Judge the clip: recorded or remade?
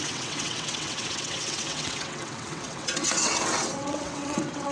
remade